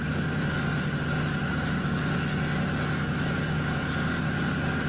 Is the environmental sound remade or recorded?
recorded